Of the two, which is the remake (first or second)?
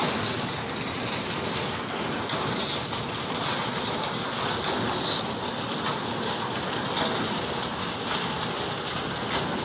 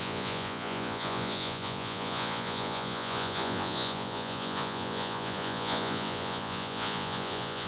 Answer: second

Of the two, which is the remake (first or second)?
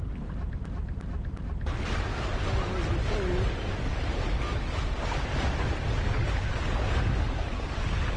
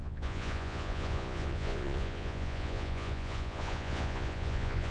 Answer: second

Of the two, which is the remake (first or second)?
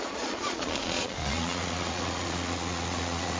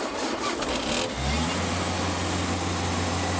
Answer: first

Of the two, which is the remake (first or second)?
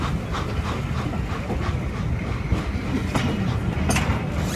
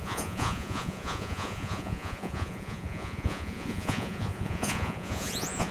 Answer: second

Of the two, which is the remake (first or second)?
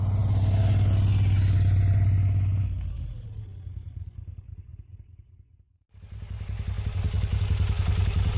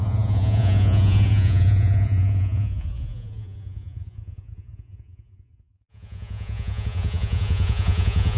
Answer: second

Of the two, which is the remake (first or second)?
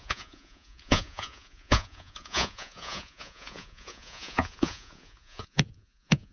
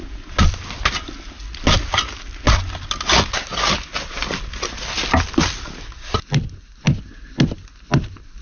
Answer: first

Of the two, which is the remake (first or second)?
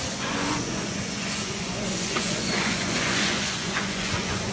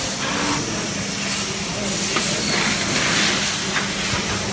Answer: first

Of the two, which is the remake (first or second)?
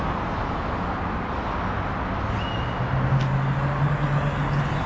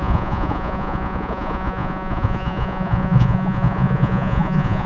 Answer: second